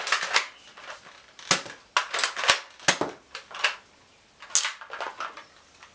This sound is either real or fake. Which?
real